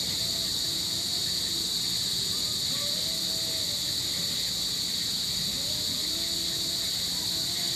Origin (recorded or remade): recorded